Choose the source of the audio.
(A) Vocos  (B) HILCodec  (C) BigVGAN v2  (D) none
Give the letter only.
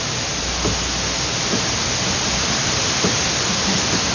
D